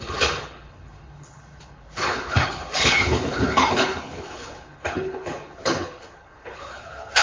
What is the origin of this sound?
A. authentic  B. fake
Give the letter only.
B